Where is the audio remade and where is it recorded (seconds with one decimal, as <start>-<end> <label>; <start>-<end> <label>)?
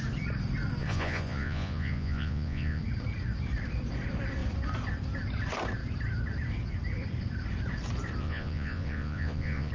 0.0-0.8 recorded; 0.8-2.8 remade; 2.8-8.2 recorded; 8.2-9.7 remade